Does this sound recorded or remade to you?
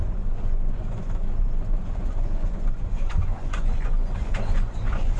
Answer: remade